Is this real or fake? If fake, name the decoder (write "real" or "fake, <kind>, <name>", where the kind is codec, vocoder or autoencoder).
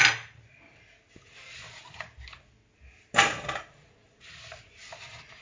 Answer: real